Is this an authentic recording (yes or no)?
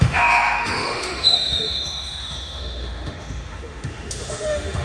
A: no